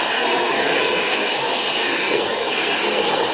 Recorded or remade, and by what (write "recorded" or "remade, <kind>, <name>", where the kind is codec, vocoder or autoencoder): remade, codec, SNAC